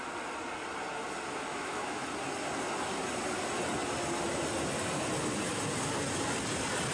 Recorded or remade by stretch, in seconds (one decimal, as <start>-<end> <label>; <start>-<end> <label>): 0.0-1.5 recorded; 1.5-2.1 remade; 2.1-6.9 recorded